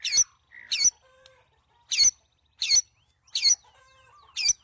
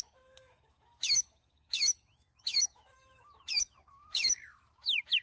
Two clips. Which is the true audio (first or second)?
first